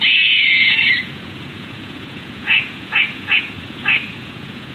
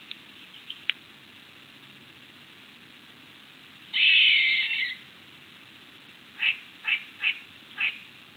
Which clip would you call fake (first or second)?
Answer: first